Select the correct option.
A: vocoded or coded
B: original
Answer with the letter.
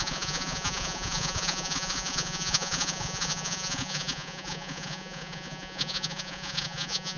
A